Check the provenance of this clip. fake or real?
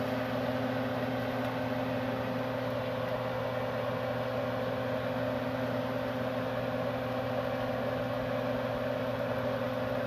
real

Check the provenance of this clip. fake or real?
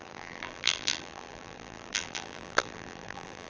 fake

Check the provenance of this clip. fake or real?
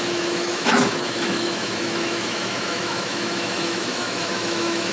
fake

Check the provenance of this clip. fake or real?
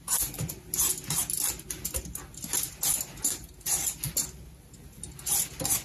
real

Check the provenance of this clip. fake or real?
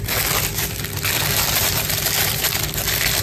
real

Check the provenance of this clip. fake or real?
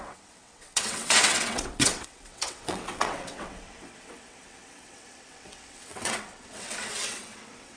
fake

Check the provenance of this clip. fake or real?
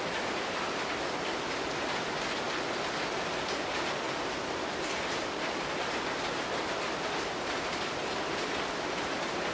real